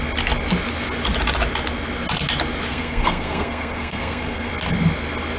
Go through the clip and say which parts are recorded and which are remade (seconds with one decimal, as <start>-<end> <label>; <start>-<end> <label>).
0.0-2.7 recorded; 2.7-4.5 remade; 4.5-5.4 recorded